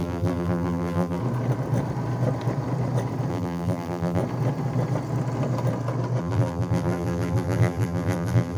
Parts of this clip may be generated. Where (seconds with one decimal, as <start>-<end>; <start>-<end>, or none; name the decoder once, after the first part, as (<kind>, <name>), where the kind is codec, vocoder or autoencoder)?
0.0-1.2 (vocoder, BigVGAN v2); 3.3-4.2; 6.2-8.6